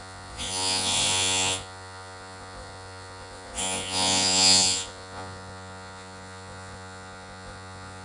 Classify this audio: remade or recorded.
remade